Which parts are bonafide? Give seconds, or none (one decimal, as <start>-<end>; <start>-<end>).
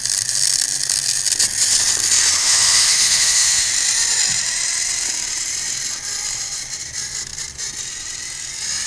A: 0.0-2.4; 3.7-8.9